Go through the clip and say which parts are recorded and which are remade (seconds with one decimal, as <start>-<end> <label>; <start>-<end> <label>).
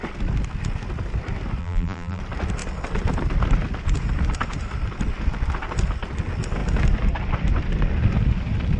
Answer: 0.0-1.6 recorded; 1.6-2.2 remade; 2.2-8.8 recorded